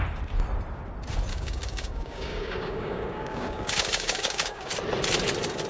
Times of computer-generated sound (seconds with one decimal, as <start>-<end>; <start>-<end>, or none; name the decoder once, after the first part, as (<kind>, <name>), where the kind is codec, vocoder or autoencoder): 1.3-4.7 (codec, DAC)